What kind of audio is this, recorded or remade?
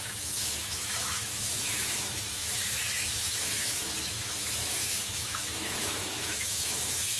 remade